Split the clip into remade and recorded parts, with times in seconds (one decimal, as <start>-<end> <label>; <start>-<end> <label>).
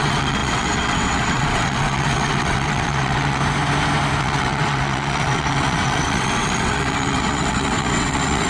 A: 0.0-3.4 remade; 3.4-4.2 recorded; 4.2-8.5 remade